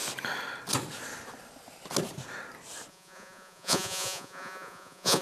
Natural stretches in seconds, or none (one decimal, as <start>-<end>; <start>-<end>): 0.0-2.9